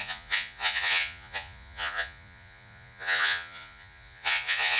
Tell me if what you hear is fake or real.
fake